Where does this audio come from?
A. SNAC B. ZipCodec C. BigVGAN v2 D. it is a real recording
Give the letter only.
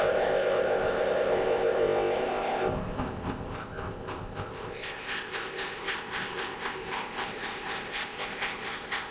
B